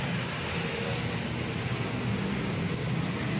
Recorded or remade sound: recorded